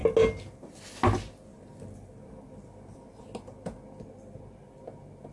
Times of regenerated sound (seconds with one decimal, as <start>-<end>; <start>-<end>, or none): none